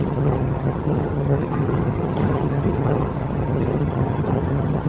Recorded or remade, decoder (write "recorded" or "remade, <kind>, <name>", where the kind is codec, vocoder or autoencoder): remade, vocoder, HiFi-GAN